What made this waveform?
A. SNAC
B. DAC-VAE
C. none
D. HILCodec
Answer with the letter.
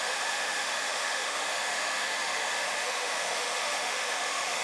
B